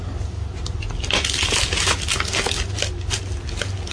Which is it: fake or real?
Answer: real